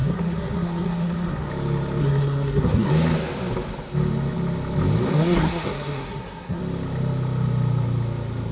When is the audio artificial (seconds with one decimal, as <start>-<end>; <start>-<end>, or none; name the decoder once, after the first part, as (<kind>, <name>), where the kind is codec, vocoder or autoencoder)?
0.0-1.5 (codec, SNAC); 2.0-2.9; 5.1-6.6

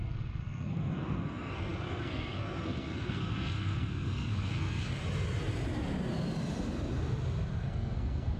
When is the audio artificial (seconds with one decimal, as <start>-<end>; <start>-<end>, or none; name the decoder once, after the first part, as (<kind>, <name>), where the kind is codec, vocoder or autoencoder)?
0.0-5.0 (codec, SNAC); 7.5-8.4

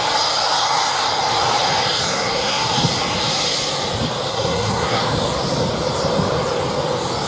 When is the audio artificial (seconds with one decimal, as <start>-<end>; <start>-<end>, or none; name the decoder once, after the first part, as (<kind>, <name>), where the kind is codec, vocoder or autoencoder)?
2.1-2.7 (codec, SNAC); 4.3-5.0

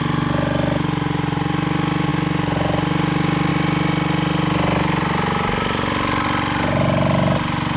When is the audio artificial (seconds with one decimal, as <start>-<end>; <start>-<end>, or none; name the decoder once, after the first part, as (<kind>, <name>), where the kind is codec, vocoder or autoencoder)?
none

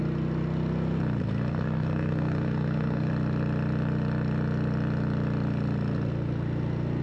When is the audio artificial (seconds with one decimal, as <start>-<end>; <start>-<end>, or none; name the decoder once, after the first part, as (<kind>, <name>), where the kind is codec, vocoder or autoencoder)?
1.5-3.1 (codec, SNAC)